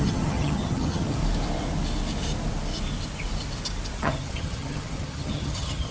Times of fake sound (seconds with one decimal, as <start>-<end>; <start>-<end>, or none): 0.0-1.2; 4.0-5.9

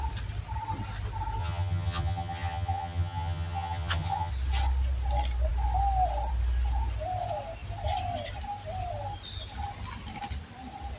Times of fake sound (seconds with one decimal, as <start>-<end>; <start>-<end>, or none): 1.4-4.3